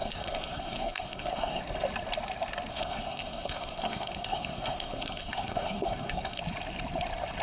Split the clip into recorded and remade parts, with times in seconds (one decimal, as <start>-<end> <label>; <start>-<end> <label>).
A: 0.0-1.6 remade; 1.6-2.7 recorded; 2.7-6.4 remade; 6.4-7.4 recorded